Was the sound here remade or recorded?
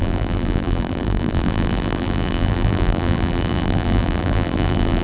remade